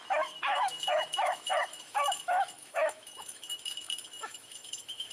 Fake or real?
fake